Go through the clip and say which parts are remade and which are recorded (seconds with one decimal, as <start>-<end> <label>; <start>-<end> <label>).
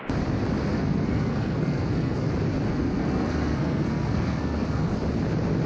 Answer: 0.0-0.7 recorded; 0.7-2.3 remade; 2.3-2.7 recorded; 2.7-5.0 remade; 5.0-5.7 recorded